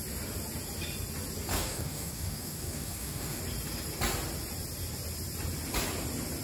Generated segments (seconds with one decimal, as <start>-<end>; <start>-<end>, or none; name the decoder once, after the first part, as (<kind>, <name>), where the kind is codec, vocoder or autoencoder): 1.5-3.4 (codec, DAC)